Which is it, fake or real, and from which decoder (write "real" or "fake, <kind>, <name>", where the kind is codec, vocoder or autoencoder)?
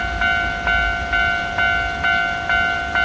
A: real